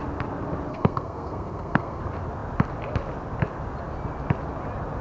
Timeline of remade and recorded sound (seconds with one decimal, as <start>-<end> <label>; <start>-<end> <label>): 0.0-0.7 recorded; 0.7-2.0 remade; 2.0-5.0 recorded

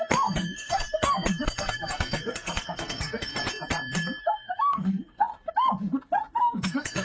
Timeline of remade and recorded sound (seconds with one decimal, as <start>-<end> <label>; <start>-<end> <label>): 0.0-3.3 remade; 3.3-4.2 recorded; 4.2-5.3 remade; 5.3-6.4 recorded; 6.4-7.0 remade

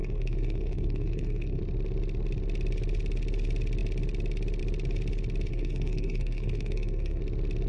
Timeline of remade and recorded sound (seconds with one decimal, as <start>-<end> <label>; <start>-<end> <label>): 0.0-1.6 remade; 1.6-5.5 recorded; 5.5-7.2 remade; 7.2-7.7 recorded

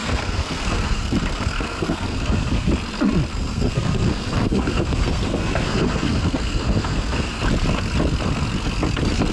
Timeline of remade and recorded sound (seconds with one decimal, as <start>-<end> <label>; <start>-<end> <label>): 0.0-2.7 remade; 2.7-3.3 recorded; 3.3-7.4 remade; 7.4-9.3 recorded